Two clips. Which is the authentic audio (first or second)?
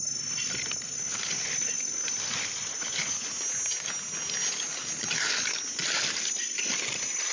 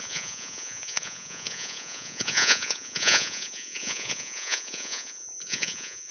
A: first